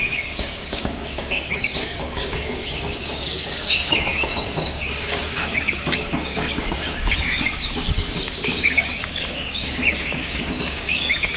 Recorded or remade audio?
remade